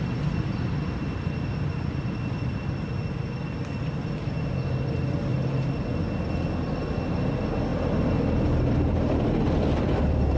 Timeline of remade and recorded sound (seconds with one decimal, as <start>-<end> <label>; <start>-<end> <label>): 0.0-5.3 recorded; 5.3-5.8 remade; 5.8-7.7 recorded; 7.7-10.4 remade